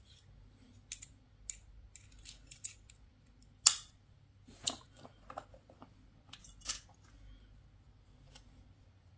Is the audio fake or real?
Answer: real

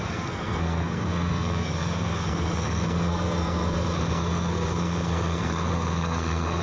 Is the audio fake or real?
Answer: fake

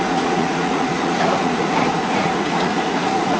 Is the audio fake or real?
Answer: fake